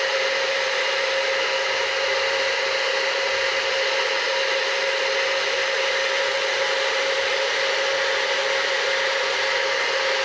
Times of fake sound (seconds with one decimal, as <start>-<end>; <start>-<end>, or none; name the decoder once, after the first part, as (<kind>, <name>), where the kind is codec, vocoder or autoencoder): none